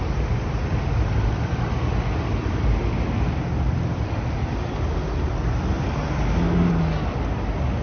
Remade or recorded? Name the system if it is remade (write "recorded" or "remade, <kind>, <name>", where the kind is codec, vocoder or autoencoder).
recorded